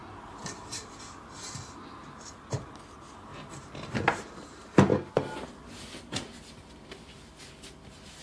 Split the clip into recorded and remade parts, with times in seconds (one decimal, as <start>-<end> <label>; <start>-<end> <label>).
0.0-0.9 remade; 0.9-3.3 recorded; 3.3-4.0 remade; 4.0-8.2 recorded